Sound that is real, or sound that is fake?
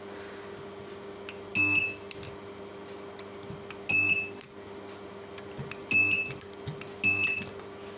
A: real